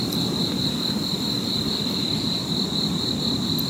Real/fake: real